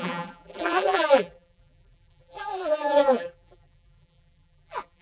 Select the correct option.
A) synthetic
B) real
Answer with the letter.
A